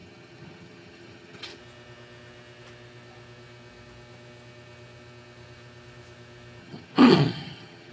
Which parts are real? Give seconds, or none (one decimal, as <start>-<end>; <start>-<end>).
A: 1.6-6.6